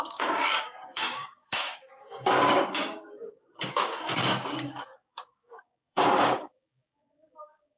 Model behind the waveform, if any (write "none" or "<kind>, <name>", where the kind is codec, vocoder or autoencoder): codec, DAC